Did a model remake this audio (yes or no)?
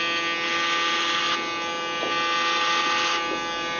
no